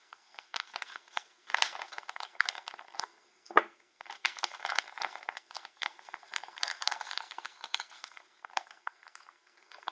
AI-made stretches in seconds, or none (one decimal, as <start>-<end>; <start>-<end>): 0.0-9.9